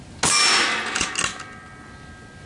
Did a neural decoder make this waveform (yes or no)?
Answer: no